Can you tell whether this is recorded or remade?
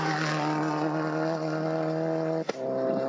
recorded